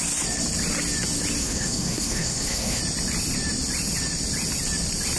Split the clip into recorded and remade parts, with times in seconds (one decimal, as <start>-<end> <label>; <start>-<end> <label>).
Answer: 0.0-1.4 recorded; 1.4-2.8 remade; 2.8-5.2 recorded